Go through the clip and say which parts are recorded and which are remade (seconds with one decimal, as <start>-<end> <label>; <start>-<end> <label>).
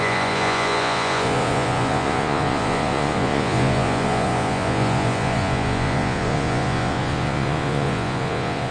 0.0-8.7 remade